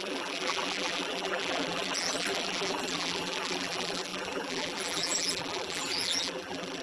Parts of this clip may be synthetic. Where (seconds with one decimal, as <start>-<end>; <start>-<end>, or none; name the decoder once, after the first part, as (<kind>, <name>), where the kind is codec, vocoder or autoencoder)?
0.0-6.8 (vocoder, BigVGAN v2)